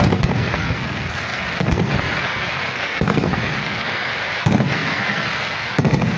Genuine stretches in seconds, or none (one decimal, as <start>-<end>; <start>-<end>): none